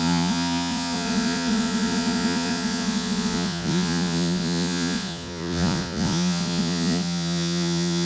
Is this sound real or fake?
fake